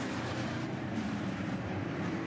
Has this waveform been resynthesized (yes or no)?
yes